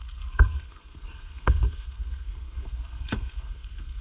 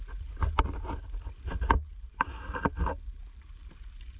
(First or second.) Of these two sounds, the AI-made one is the first